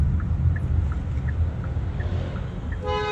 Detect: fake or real real